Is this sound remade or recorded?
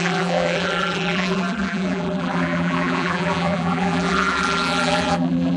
remade